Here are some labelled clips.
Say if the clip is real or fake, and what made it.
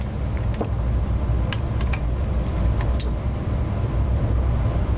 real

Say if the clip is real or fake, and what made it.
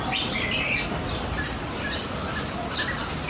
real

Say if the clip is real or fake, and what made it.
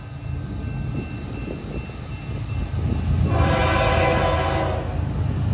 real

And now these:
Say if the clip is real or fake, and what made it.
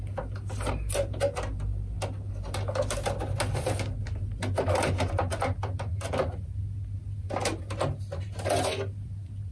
real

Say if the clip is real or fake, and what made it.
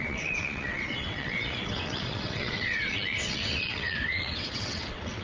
fake, vocoder, WaveNeXt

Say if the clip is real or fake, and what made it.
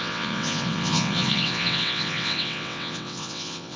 fake, vocoder, WaveNeXt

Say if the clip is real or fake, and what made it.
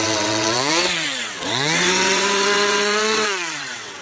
fake, vocoder, WaveNeXt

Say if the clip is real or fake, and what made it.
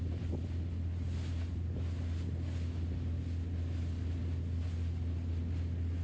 real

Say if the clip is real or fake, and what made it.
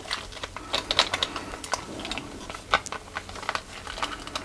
real